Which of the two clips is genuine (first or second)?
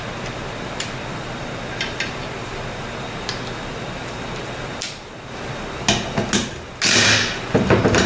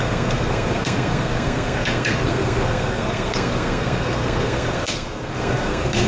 first